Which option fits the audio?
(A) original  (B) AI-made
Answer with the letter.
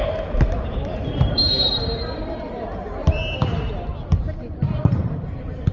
B